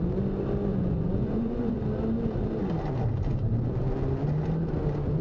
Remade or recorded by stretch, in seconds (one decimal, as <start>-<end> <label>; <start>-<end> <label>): 0.0-0.7 recorded; 0.7-1.8 remade; 1.8-5.2 recorded